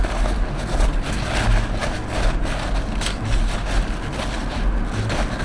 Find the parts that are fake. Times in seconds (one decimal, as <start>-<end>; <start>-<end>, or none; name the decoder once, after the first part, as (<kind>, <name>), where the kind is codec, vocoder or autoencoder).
none